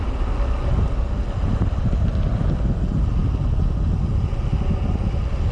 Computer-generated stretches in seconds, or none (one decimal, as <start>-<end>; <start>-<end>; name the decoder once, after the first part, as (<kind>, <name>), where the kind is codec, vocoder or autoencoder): none